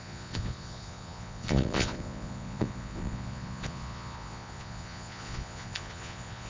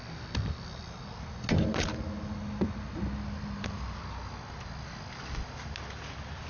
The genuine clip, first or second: second